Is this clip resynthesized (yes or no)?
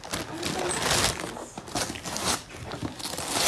no